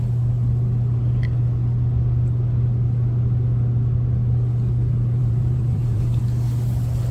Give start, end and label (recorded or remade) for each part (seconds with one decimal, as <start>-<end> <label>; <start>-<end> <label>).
0.0-5.2 recorded; 5.2-6.2 remade; 6.2-7.1 recorded